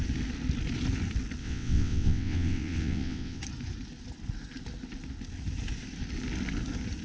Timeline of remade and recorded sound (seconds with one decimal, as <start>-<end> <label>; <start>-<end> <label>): 0.0-1.4 recorded; 1.4-3.4 remade; 3.4-7.0 recorded